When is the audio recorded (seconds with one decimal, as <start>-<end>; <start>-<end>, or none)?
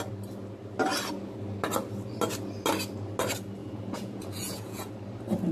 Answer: 0.0-3.6; 4.9-5.5